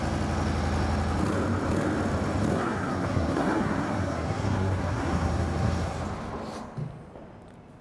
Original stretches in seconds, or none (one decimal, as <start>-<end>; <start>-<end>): 0.0-2.5; 6.0-7.8